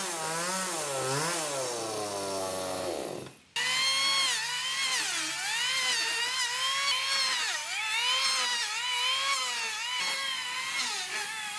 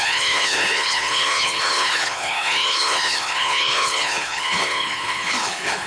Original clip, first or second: first